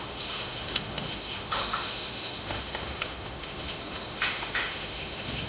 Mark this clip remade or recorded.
remade